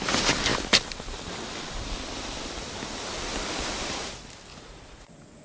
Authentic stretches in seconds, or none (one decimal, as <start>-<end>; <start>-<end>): 0.0-4.5